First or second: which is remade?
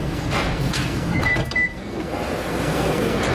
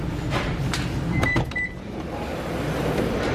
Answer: first